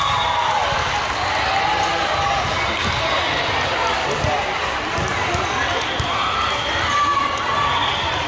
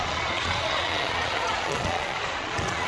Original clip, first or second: first